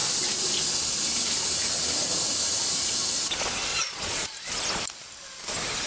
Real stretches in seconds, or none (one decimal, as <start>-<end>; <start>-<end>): 0.0-3.7; 4.5-5.9